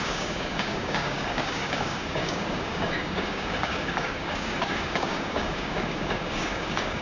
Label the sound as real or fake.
fake